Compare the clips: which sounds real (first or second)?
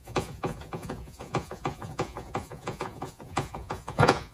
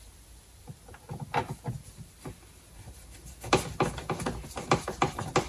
second